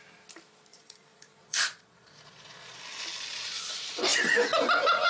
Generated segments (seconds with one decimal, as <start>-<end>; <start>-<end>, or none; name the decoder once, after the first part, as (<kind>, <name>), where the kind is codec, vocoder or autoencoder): 0.7-2.8 (vocoder, Vocos)